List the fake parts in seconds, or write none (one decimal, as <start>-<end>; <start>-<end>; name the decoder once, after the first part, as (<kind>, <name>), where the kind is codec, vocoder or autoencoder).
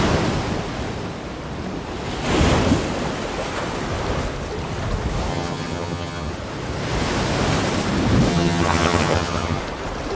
5.3-6.3 (vocoder, HiFi-GAN); 8.3-9.6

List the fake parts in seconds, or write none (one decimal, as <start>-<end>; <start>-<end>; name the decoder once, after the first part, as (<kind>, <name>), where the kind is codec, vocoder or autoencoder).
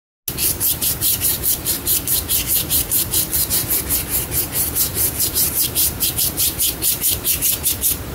0.4-3.5 (vocoder, BigVGAN v2); 4.9-7.5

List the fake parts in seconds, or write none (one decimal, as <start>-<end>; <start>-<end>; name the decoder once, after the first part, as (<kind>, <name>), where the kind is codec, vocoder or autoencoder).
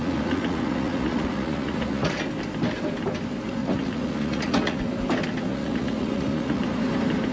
0.0-2.2 (vocoder, Vocos); 3.6-4.8; 5.5-6.6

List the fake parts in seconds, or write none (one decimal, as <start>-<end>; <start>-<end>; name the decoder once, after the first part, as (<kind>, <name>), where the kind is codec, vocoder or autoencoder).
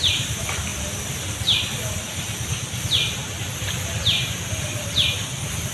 0.0-5.7 (vocoder, BigVGAN v2)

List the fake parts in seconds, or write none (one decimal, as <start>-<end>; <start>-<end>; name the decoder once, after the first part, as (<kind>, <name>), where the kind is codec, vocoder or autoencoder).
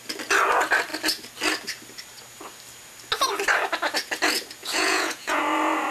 4.6-5.4 (vocoder, Vocos)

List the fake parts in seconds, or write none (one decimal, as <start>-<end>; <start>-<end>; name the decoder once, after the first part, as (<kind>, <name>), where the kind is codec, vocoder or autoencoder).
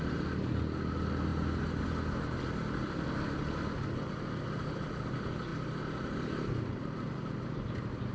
0.0-1.3 (vocoder, BigVGAN v2); 2.9-8.1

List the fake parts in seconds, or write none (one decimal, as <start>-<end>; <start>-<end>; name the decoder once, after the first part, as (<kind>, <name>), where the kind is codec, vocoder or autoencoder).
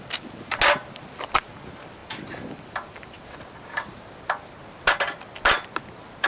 none